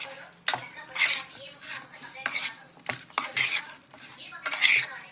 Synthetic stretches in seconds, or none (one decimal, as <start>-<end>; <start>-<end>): 0.6-1.6